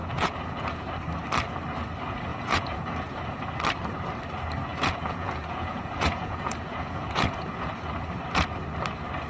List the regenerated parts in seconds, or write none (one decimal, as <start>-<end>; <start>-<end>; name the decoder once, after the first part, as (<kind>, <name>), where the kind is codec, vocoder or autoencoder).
0.0-0.8 (vocoder, Vocos); 2.3-3.3; 4.7-7.7